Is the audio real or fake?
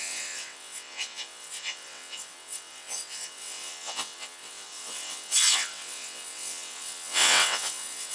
fake